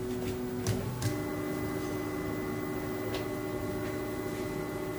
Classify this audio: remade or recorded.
recorded